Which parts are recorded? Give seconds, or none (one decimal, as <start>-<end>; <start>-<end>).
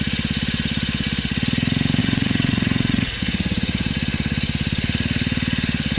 0.0-2.0; 3.9-6.0